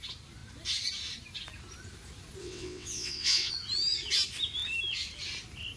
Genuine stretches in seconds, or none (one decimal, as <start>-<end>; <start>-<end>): 0.0-2.4; 3.5-5.8